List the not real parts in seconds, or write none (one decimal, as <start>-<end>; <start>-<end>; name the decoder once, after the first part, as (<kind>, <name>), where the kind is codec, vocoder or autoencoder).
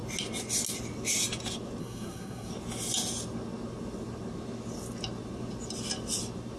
1.8-2.5 (codec, SNAC)